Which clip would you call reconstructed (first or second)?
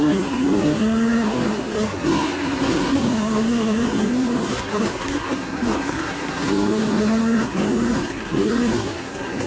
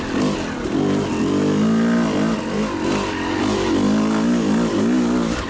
first